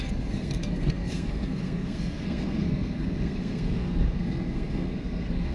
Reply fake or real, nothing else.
fake